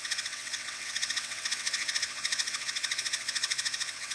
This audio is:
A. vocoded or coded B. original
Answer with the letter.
A